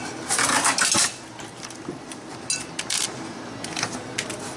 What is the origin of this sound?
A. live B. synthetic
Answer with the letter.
A